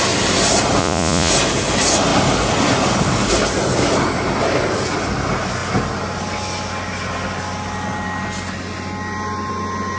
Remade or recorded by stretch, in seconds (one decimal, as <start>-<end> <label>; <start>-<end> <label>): 0.0-0.8 recorded; 0.8-1.3 remade; 1.3-10.0 recorded